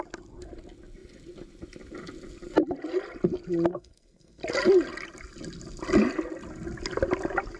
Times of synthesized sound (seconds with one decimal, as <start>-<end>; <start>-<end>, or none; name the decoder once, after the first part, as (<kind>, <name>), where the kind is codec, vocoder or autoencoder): 3.7-4.4 (codec, SNAC)